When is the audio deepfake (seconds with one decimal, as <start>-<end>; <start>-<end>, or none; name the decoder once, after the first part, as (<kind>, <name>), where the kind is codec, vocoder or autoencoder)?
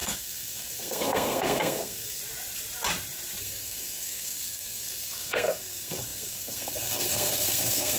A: 0.0-2.2 (codec, SNAC); 3.4-8.0